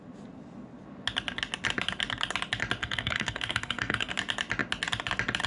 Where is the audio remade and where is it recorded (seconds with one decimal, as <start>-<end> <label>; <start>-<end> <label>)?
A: 0.0-2.8 recorded; 2.8-4.1 remade; 4.1-5.5 recorded